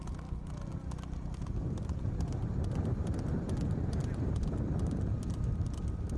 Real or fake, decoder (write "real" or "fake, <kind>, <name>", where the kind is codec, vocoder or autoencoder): real